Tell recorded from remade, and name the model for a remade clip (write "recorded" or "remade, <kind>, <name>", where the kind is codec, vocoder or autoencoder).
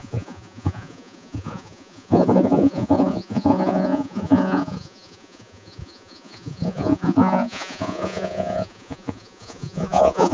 remade, vocoder, Vocos